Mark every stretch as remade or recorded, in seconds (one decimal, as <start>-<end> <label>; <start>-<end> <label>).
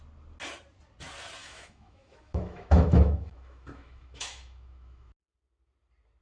0.0-1.4 recorded; 1.4-5.1 remade; 5.1-6.2 recorded